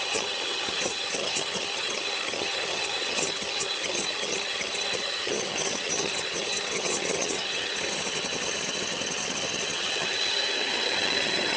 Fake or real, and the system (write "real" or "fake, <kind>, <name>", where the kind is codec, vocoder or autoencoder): fake, vocoder, HiFi-GAN